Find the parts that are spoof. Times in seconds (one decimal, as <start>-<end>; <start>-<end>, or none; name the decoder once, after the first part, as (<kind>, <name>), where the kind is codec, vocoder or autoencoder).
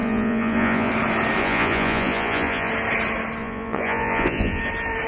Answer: 0.0-0.9 (vocoder, Vocos); 1.4-2.7; 3.4-4.6